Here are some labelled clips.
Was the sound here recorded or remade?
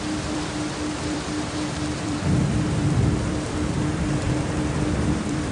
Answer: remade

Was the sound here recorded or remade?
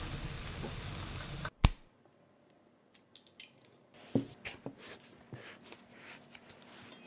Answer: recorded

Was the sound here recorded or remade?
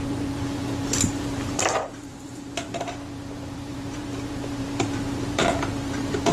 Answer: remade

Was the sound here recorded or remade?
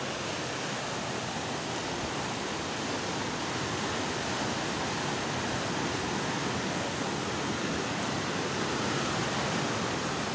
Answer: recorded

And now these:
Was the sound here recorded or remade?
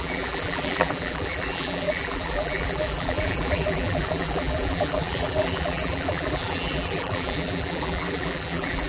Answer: remade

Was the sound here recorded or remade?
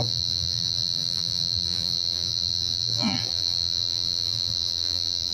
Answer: remade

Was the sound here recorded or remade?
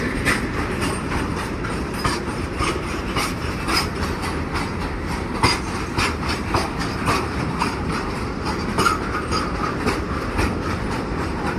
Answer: remade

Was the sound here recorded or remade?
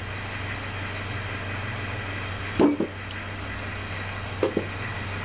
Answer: recorded